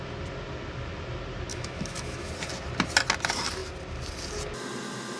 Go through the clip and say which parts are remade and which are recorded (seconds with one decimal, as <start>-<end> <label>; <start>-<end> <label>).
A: 0.0-1.5 recorded; 1.5-2.3 remade; 2.3-5.2 recorded